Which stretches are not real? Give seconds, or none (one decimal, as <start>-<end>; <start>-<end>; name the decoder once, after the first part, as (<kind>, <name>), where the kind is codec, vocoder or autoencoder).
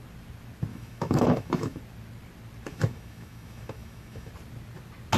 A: 0.7-1.8 (autoencoder, DAC-VAE); 2.7-4.3